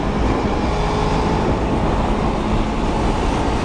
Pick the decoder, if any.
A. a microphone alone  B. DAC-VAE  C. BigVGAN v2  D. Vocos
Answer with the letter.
A